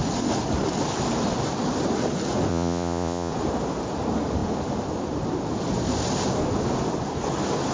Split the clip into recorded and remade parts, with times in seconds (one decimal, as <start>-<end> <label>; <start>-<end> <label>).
0.0-2.5 recorded; 2.5-3.3 remade; 3.3-7.7 recorded